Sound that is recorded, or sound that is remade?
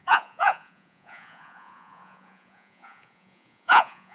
remade